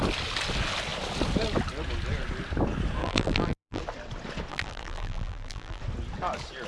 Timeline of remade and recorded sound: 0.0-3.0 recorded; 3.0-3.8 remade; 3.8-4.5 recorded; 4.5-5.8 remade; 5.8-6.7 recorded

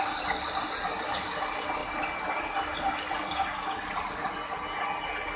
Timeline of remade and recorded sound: 0.0-5.4 recorded